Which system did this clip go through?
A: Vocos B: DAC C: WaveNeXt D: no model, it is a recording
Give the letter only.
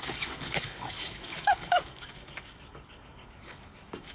B